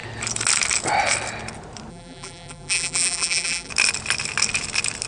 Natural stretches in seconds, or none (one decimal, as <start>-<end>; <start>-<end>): 0.0-1.9; 3.7-5.1